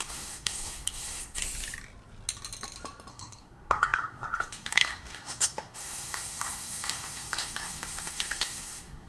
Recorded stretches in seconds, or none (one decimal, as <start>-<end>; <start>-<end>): 1.4-3.1